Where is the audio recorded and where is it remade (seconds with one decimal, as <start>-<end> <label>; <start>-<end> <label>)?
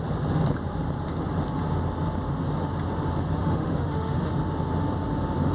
0.0-3.4 recorded; 3.4-4.3 remade; 4.3-5.5 recorded